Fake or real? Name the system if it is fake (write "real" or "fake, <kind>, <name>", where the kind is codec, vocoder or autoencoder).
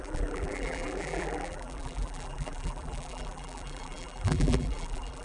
fake, vocoder, BigVGAN v2